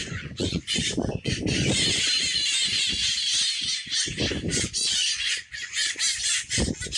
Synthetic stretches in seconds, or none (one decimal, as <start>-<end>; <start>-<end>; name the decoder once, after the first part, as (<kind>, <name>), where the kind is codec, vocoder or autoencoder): 0.0-1.4 (vocoder, Vocos); 4.5-5.9